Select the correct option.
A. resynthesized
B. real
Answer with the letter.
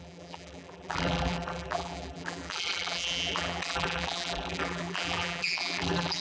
A